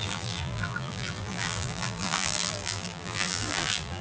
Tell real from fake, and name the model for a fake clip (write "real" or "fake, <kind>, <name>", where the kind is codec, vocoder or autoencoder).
fake, vocoder, BigVGAN v2